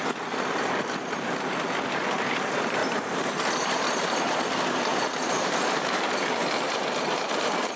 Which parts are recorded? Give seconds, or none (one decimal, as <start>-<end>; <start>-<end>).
0.0-2.8; 3.3-4.9